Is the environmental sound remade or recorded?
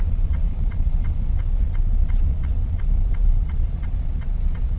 remade